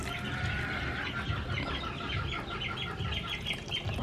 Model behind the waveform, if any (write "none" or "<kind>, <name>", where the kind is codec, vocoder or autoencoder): none